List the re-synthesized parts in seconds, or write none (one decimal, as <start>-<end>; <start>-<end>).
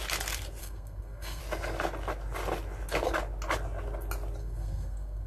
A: 0.6-1.4; 4.4-5.3